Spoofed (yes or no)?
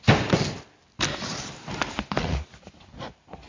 yes